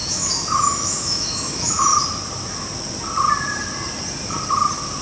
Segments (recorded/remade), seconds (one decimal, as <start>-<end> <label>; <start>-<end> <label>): 0.0-1.9 remade; 1.9-5.0 recorded